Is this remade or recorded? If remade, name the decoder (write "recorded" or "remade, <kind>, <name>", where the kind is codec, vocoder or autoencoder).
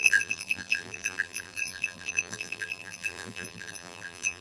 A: remade, vocoder, BigVGAN v2